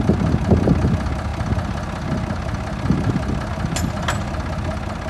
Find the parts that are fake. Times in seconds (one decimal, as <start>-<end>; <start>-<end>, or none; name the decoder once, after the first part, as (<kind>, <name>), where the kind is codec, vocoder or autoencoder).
none